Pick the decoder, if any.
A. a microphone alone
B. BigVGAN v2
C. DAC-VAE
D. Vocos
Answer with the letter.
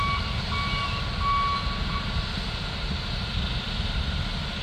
A